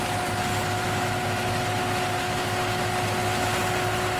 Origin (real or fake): real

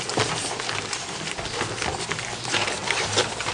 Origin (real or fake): real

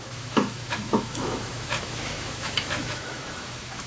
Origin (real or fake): fake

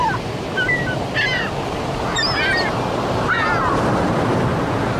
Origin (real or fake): real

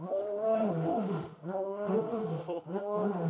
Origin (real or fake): fake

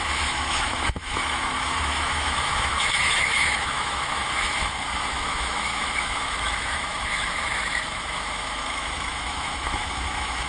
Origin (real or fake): fake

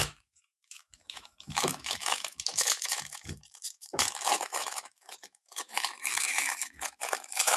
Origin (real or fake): fake